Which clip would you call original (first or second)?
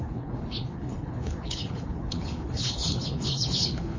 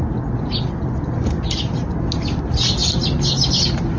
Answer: second